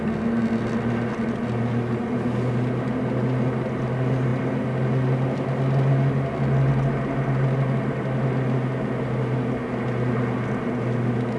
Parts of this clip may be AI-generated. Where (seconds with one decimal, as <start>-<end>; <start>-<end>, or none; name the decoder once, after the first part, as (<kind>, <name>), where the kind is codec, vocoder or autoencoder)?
none